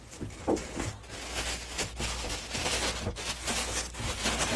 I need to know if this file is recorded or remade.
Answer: recorded